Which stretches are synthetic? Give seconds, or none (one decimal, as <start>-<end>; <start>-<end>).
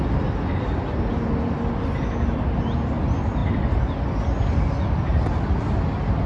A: none